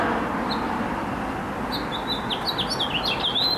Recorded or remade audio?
recorded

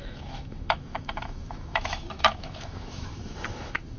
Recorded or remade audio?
remade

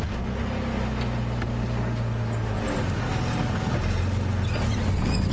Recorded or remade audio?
recorded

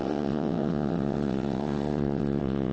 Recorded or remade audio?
remade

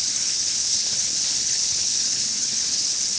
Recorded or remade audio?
remade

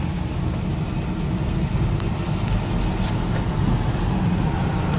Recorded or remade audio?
recorded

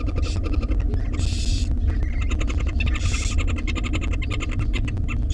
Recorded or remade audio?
recorded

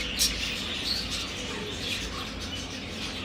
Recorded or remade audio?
recorded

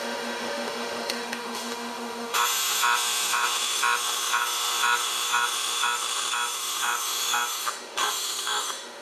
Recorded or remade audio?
remade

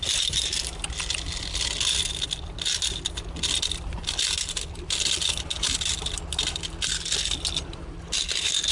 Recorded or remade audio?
recorded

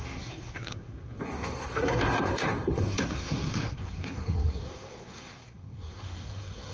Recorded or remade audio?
remade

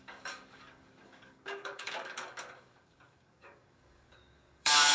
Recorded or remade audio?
remade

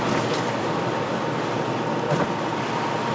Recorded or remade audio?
remade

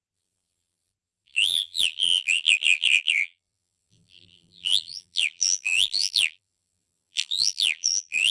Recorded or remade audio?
remade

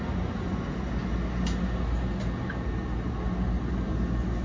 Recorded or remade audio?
recorded